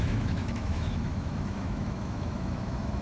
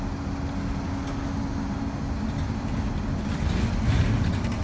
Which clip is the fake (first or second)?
first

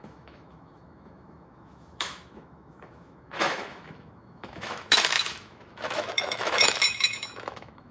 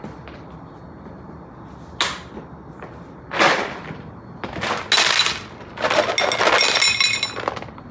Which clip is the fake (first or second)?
first